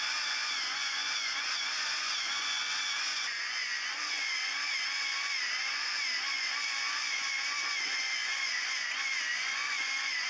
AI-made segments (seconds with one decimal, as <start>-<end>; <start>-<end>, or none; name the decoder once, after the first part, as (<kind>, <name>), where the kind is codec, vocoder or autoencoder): 0.0-10.3 (vocoder, Vocos)